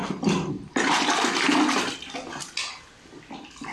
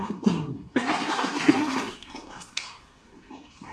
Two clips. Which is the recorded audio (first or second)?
first